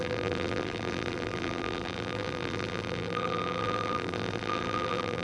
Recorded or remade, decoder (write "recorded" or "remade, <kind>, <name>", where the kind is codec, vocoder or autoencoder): remade, vocoder, BigVGAN v2